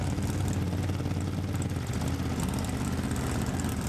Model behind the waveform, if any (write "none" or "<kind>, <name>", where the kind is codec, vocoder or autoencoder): none